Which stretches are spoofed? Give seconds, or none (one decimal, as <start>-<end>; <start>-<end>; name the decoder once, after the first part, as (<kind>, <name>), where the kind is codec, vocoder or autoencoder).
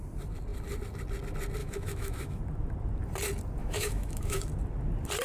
1.6-2.4 (autoencoder, DAC-VAE); 3.6-4.5